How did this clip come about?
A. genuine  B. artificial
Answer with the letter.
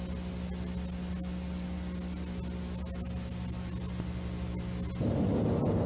A